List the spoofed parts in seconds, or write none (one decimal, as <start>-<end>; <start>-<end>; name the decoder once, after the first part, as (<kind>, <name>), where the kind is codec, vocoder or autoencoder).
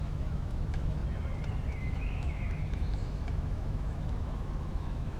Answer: 0.0-1.0 (autoencoder, DAC-VAE); 1.7-5.2